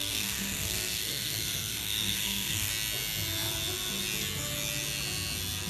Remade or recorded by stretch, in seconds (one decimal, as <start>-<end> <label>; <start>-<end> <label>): 0.0-2.7 remade; 2.7-5.7 recorded